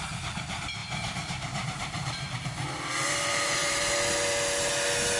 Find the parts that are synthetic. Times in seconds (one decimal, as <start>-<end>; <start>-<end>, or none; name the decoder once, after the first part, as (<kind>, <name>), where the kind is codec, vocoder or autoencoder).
0.8-3.9 (vocoder, BigVGAN v2)